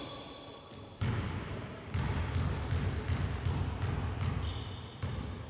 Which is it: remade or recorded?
recorded